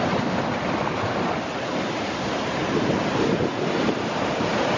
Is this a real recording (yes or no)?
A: yes